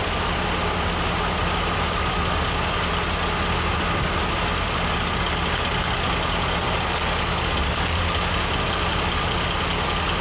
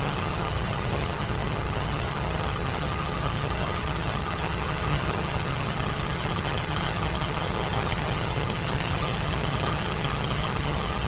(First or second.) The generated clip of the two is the second